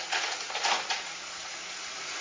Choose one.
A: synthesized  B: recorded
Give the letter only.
A